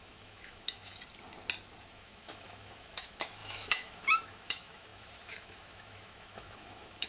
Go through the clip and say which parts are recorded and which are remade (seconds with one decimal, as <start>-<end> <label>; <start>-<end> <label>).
0.0-0.9 remade; 0.9-1.8 recorded; 1.8-7.1 remade